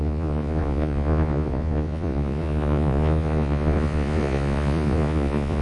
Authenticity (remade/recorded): remade